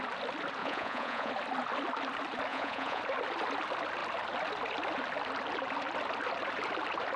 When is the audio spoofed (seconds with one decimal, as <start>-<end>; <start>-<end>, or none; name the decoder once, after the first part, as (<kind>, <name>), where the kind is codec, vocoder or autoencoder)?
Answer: 0.6-1.3 (vocoder, Vocos); 2.5-3.0